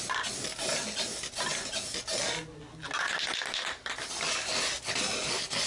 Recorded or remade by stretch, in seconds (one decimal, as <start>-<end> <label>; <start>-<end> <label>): 0.0-5.7 recorded